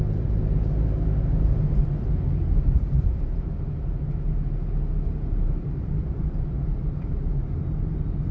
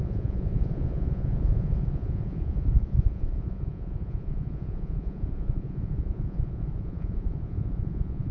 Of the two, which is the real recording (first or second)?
first